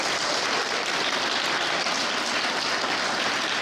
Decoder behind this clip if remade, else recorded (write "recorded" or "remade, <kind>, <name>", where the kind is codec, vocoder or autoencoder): recorded